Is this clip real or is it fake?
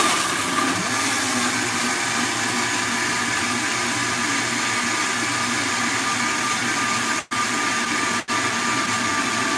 real